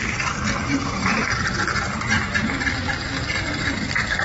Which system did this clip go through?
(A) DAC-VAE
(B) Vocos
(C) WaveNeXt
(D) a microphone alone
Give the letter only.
D